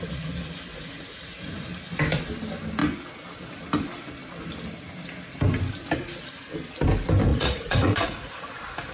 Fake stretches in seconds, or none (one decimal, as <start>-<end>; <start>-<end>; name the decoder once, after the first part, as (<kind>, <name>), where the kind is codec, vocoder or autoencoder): 0.7-1.7 (vocoder, Vocos); 7.3-8.3